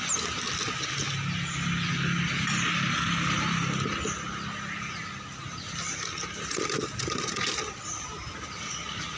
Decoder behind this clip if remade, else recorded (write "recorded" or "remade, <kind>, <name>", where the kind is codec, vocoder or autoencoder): recorded